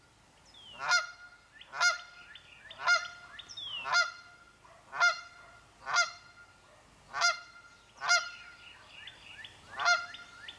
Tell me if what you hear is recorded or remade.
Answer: recorded